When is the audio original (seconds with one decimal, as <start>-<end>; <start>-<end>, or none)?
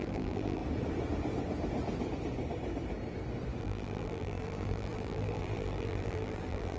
0.6-3.6